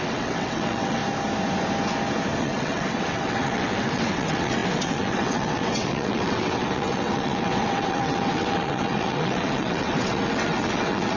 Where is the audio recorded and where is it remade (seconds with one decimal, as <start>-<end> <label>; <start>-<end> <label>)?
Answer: 0.0-1.0 remade; 1.0-2.4 recorded; 2.4-11.2 remade